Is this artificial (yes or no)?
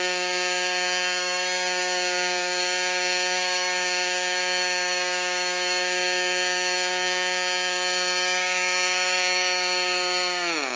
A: yes